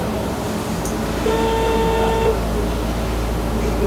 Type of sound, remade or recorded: recorded